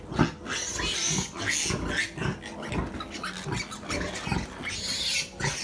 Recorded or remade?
recorded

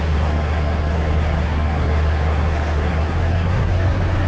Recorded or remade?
remade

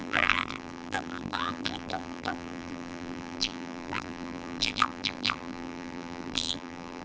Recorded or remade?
remade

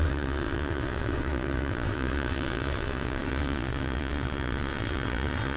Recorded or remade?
remade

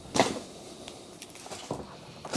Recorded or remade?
recorded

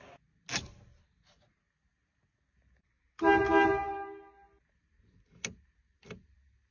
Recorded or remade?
recorded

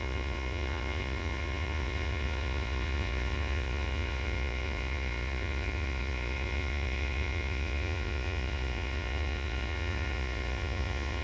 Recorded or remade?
remade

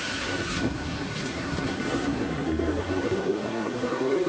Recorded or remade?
remade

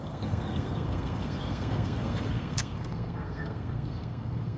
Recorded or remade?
remade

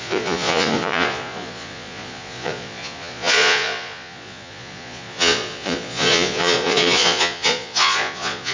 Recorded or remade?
remade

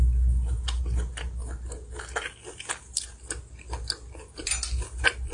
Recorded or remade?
recorded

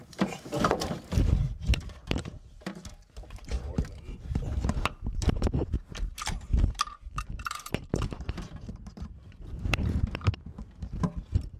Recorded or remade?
remade